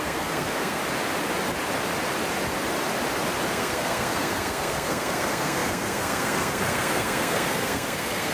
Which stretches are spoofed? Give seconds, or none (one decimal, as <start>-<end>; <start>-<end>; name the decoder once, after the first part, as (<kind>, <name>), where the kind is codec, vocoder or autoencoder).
0.0-0.8 (codec, SNAC); 3.5-8.3